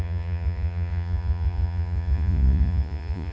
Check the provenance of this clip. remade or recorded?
remade